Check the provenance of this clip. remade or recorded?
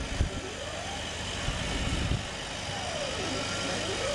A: recorded